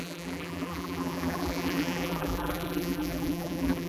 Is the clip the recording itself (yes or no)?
no